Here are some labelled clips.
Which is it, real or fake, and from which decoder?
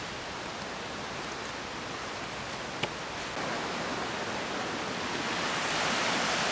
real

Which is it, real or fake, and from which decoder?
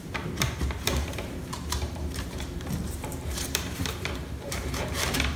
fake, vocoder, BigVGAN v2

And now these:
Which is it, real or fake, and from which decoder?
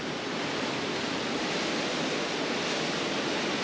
real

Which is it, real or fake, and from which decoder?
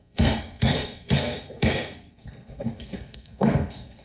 fake, codec, SNAC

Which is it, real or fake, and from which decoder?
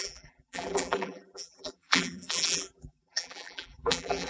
fake, vocoder, BigVGAN v2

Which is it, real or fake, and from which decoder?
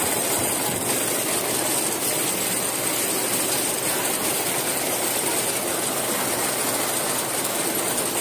real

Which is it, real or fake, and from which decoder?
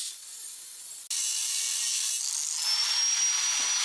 real